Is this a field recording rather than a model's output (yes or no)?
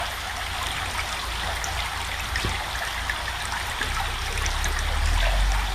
yes